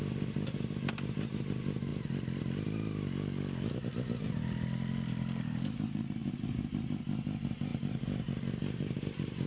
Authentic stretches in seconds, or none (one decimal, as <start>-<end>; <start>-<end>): 0.0-6.2; 7.0-7.7